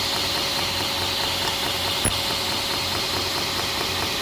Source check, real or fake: real